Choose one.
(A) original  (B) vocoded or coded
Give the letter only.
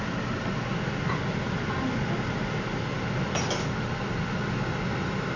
A